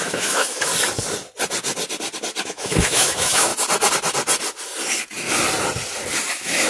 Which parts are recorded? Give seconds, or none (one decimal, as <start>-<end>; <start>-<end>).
0.7-2.4; 3.5-6.3